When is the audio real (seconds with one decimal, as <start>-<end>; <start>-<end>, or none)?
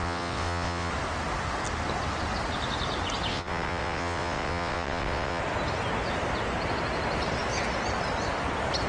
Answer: 0.9-3.3; 5.4-8.9